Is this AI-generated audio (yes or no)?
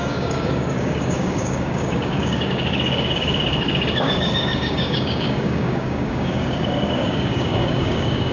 yes